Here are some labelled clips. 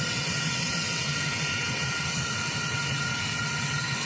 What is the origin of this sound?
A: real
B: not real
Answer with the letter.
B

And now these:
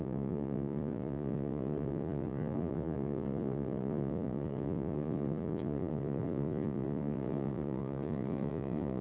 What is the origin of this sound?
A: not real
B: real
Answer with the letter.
A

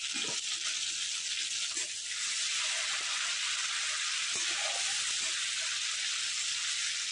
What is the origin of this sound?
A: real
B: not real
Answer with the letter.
A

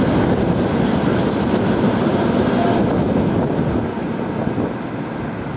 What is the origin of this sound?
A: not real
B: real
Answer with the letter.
B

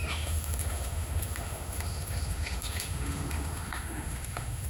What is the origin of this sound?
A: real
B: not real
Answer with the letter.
B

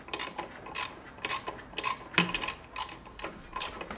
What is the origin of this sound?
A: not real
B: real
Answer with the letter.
B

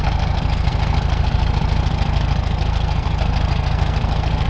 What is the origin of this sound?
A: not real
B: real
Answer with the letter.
A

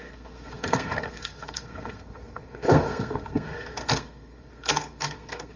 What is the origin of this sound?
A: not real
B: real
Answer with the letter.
A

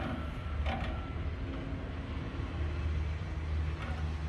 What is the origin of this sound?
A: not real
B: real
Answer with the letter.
B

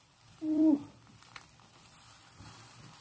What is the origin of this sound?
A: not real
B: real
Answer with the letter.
A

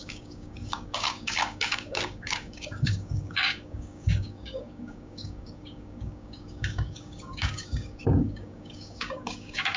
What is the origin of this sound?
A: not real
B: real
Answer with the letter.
A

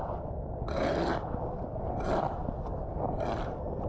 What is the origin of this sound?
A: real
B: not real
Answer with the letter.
A